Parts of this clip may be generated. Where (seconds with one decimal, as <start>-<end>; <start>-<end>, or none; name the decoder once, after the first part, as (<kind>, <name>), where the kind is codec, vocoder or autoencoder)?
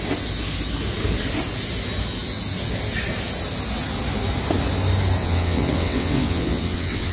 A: 5.2-7.1 (vocoder, WaveNeXt)